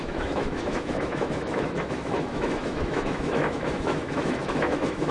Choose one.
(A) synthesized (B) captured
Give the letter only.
A